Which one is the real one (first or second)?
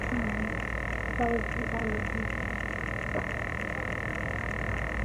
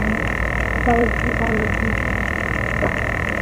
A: first